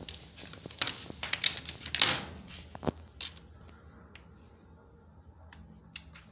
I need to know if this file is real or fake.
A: real